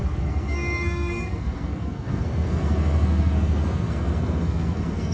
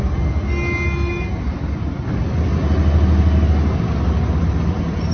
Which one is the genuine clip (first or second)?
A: second